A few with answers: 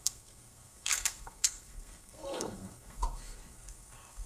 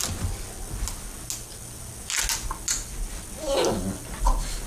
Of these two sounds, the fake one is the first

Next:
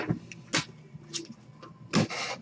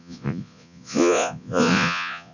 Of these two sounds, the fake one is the second